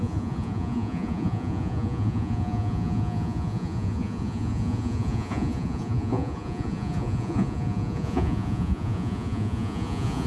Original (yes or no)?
no